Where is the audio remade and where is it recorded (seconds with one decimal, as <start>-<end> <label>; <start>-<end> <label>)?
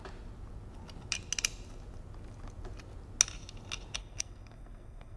0.0-4.0 recorded; 4.0-5.2 remade